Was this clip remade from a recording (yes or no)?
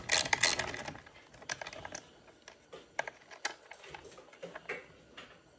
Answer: no